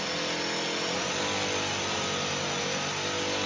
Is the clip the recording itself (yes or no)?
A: yes